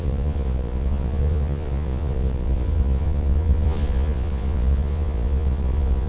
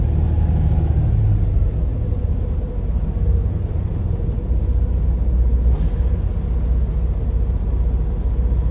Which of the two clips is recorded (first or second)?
second